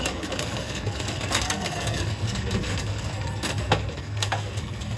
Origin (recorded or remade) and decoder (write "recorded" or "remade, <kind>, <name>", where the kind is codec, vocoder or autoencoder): remade, codec, SNAC